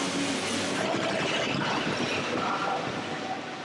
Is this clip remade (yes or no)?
no